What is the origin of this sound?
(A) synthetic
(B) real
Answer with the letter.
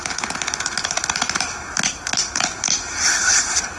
B